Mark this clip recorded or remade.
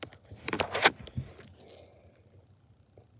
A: recorded